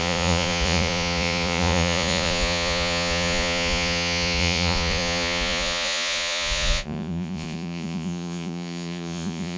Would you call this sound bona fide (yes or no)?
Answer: no